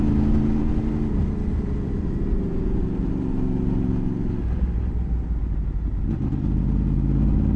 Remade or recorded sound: recorded